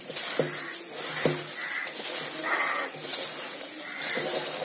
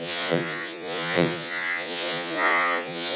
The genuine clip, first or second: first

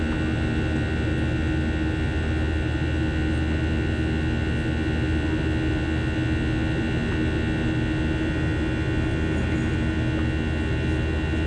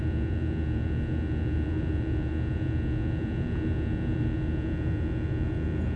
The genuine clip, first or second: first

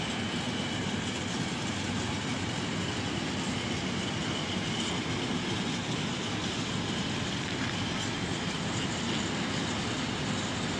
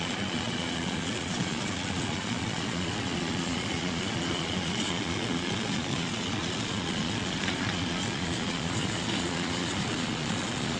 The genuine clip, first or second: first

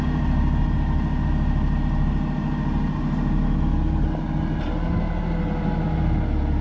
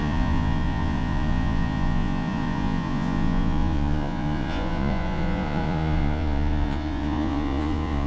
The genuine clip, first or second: first